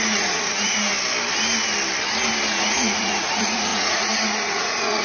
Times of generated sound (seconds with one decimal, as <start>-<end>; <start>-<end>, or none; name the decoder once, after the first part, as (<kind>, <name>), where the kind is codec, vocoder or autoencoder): 0.0-0.9 (vocoder, Vocos); 2.5-5.0